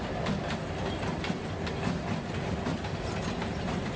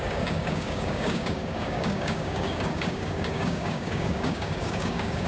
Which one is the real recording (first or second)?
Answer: first